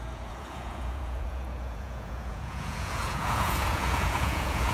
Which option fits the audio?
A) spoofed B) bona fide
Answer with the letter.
A